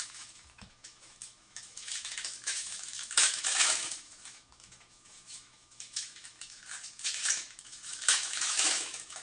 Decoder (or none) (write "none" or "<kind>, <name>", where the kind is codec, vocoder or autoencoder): autoencoder, DAC-VAE